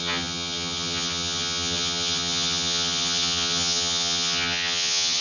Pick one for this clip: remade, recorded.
remade